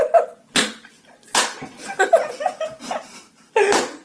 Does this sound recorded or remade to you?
recorded